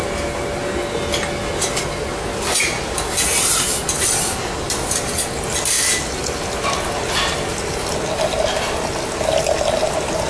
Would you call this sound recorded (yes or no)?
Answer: yes